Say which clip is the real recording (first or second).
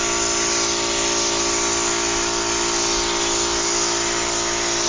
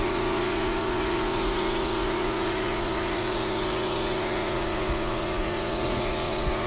first